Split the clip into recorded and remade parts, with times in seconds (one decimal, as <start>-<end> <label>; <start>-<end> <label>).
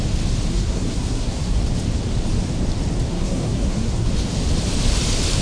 0.0-0.5 recorded; 0.5-1.6 remade; 1.6-3.1 recorded; 3.1-4.1 remade; 4.1-5.4 recorded